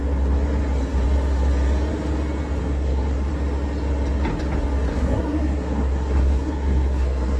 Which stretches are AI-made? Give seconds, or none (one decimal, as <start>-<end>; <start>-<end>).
2.6-3.3; 4.9-7.4